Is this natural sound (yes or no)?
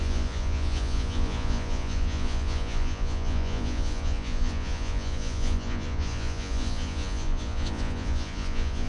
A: no